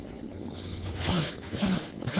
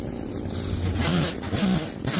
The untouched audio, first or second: second